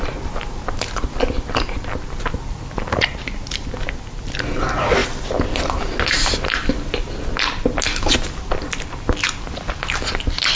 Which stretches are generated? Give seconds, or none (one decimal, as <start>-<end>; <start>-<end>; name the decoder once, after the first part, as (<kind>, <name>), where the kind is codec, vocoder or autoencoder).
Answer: none